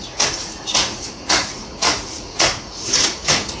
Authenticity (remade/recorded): remade